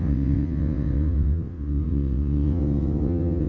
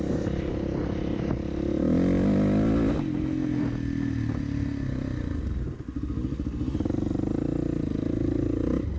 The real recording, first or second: second